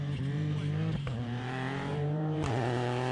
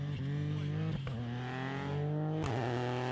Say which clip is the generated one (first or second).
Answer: first